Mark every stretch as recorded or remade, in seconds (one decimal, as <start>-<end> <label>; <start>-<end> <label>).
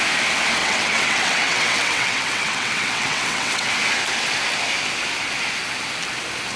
0.0-0.6 recorded; 0.6-3.7 remade; 3.7-6.6 recorded